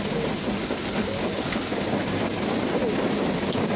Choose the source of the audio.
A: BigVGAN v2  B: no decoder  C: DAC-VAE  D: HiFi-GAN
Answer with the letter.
B